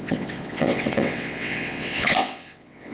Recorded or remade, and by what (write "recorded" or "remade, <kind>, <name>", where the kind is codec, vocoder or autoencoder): remade, vocoder, WaveNeXt